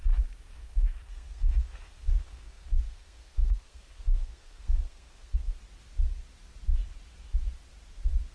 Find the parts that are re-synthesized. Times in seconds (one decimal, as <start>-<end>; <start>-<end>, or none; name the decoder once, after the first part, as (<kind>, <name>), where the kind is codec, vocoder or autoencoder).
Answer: 0.6-5.6 (codec, SNAC)